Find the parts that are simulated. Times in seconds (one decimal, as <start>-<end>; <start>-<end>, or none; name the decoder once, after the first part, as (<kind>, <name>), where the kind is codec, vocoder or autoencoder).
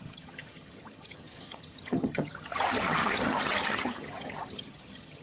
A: 0.0-5.2 (vocoder, HiFi-GAN)